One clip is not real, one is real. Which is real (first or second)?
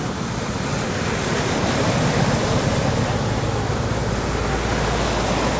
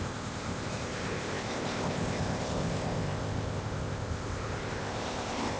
first